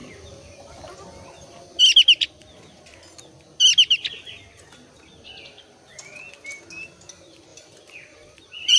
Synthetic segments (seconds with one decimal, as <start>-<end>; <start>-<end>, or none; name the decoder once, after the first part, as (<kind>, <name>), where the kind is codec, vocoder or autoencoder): 7.5-8.8 (vocoder, BigVGAN v2)